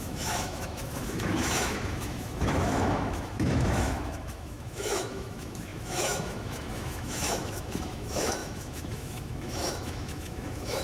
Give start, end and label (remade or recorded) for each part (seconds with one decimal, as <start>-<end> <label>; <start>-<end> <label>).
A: 0.0-10.8 remade